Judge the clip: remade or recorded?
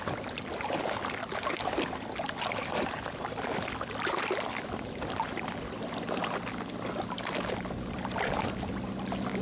recorded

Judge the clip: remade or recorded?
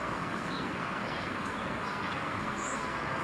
remade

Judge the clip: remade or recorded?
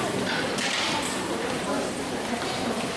remade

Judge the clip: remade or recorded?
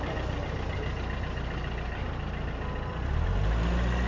recorded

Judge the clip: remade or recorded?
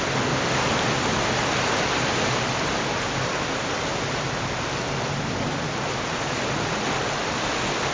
recorded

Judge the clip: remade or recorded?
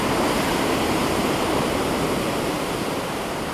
remade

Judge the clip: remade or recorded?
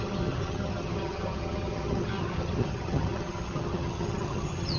remade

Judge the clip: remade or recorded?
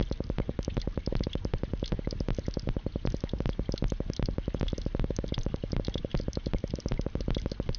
recorded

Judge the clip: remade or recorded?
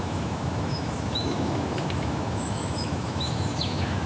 remade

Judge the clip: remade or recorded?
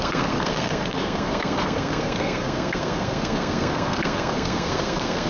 remade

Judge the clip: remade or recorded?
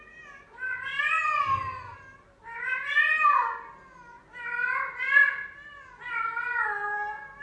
recorded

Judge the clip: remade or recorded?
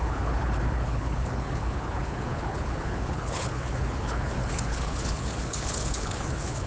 remade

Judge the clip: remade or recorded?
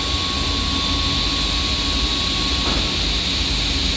recorded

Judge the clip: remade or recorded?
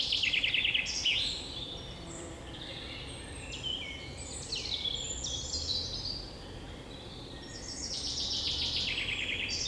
remade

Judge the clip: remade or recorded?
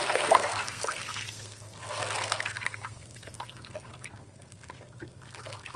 remade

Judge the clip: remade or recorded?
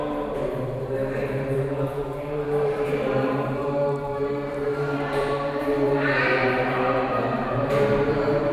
remade